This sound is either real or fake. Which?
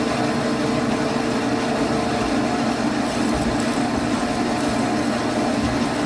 real